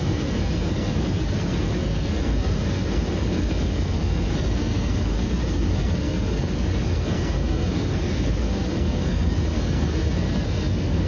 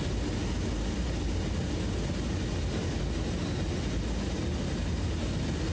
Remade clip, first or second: first